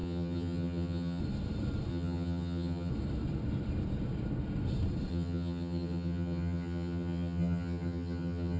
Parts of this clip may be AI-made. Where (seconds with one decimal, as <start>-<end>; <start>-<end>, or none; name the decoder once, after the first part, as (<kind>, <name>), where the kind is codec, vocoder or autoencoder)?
0.0-1.2 (vocoder, HiFi-GAN); 1.9-2.9; 5.1-8.6